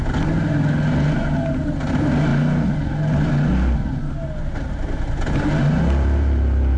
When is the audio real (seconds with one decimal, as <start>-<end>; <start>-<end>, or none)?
0.0-6.8